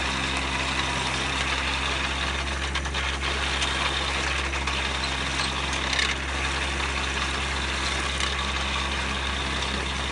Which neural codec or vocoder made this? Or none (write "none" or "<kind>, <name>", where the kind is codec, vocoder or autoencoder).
none